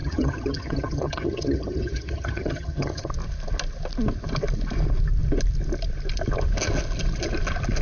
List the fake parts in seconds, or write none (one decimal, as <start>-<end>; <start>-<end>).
0.0-3.1